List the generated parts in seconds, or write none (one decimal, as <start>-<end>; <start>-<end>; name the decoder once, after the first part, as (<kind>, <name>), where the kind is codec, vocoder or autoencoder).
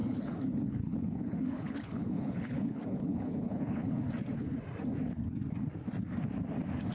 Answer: 0.0-4.1 (codec, HILCodec)